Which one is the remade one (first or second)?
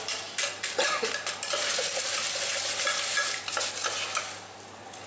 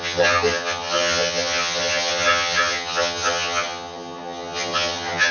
second